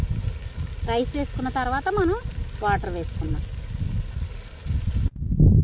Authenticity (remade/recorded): recorded